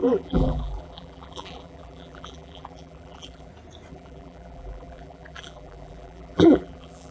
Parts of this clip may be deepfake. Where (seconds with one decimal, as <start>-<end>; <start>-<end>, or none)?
0.0-3.5; 3.9-7.1